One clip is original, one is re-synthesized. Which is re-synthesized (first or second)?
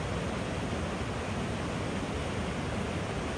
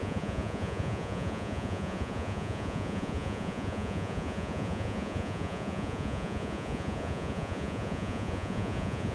second